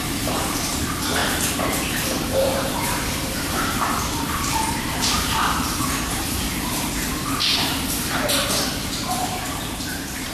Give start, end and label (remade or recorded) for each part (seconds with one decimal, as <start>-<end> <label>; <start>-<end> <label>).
0.0-1.2 remade; 1.2-2.2 recorded; 2.2-7.1 remade; 7.1-9.5 recorded; 9.5-10.3 remade